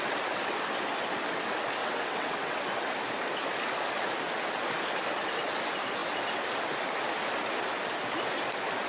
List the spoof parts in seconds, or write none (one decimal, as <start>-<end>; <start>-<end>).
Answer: 1.8-2.6